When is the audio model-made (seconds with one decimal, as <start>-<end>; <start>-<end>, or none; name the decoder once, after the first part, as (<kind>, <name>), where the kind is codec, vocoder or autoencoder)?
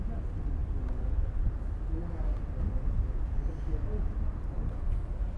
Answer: none